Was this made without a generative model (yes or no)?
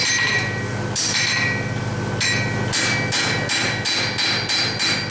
yes